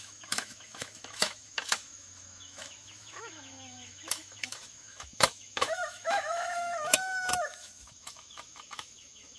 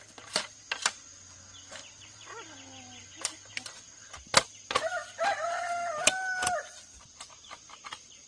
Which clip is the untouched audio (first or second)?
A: second